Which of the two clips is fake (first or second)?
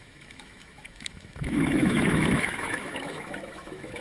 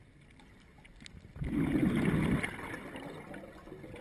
first